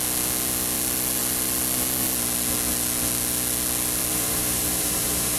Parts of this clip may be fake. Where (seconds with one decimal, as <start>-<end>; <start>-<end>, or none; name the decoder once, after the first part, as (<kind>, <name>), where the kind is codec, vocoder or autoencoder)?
4.1-5.4 (vocoder, BigVGAN v2)